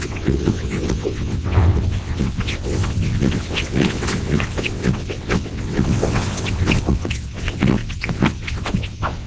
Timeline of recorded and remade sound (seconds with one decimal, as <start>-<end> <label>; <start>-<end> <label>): 0.0-9.3 remade